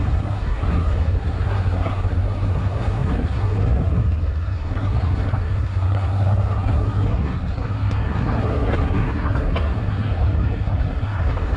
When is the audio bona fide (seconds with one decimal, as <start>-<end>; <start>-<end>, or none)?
none